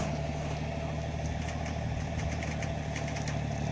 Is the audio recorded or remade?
recorded